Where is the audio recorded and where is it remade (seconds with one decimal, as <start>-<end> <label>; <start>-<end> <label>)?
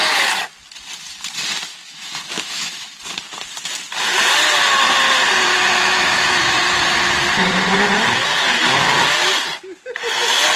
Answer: 0.0-1.7 recorded; 1.7-2.9 remade; 2.9-5.5 recorded; 5.5-6.8 remade; 6.8-10.6 recorded